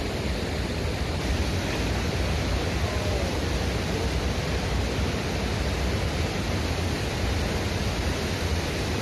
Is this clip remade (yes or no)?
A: no